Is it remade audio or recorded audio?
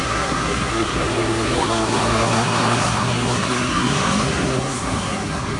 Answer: remade